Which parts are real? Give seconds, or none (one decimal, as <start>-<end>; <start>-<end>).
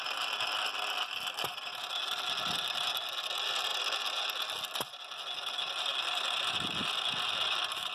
0.0-7.9